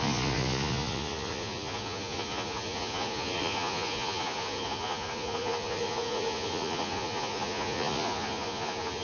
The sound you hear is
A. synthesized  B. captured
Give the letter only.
A